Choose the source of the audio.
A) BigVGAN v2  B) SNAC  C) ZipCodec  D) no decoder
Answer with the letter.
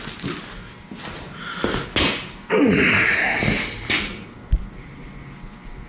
D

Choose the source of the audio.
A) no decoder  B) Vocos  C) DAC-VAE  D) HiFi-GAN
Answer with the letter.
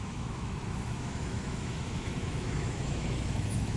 C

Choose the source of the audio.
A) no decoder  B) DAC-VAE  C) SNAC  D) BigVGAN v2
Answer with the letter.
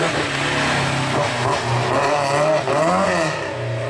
A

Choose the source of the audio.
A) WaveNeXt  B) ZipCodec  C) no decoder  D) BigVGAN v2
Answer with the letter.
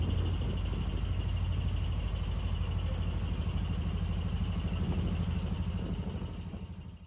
C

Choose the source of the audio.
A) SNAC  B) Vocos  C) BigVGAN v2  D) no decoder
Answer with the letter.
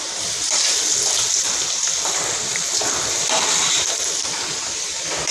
C